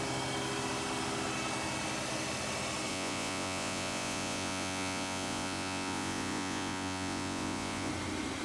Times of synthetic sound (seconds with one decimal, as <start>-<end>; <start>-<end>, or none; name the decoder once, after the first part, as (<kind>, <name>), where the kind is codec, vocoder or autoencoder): 2.9-7.9 (vocoder, Vocos)